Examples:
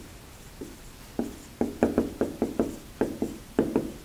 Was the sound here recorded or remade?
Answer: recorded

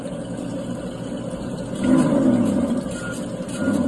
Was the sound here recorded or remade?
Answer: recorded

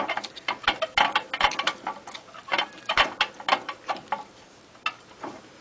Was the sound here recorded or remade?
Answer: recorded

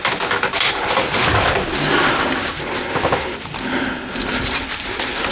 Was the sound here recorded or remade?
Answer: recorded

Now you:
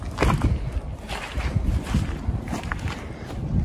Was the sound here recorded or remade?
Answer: recorded